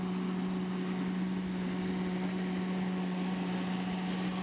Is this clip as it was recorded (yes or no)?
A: yes